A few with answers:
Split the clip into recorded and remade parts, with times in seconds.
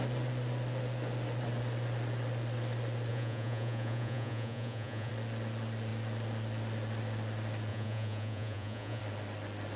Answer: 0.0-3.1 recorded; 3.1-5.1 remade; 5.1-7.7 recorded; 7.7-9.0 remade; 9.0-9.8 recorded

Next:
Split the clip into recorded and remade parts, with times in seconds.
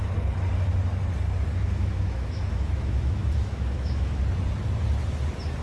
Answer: 0.0-1.5 recorded; 1.5-4.2 remade; 4.2-5.6 recorded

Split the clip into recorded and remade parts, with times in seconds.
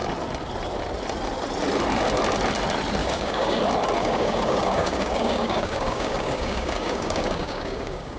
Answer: 0.0-3.0 recorded; 3.0-3.6 remade; 3.6-4.0 recorded; 4.0-8.2 remade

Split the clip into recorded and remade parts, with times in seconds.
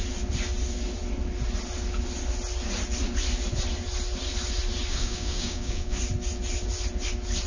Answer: 0.0-4.9 recorded; 4.9-6.0 remade; 6.0-7.5 recorded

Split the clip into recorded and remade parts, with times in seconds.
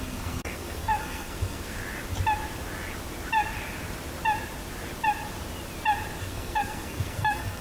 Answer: 0.0-1.8 remade; 1.8-6.2 recorded; 6.2-7.6 remade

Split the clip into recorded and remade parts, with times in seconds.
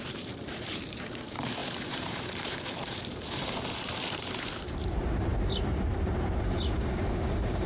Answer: 0.0-7.7 remade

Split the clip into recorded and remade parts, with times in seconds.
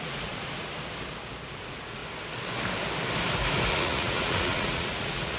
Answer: 0.0-0.7 remade; 0.7-1.5 recorded; 1.5-2.0 remade; 2.0-3.7 recorded; 3.7-5.4 remade